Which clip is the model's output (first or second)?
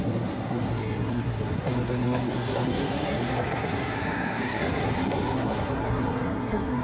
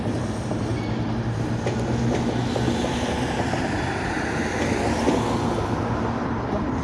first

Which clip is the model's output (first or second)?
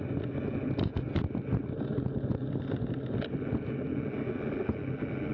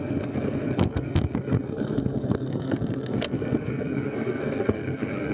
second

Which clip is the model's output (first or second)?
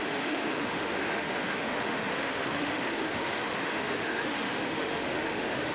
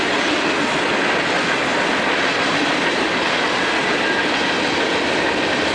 first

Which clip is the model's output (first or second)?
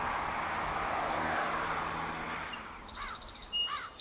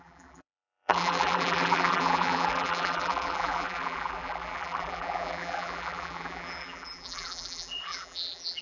second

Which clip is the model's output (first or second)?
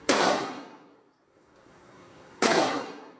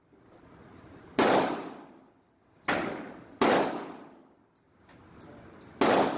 first